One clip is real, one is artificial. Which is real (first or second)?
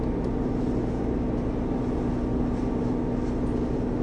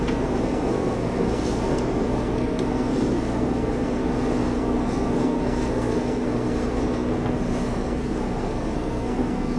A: first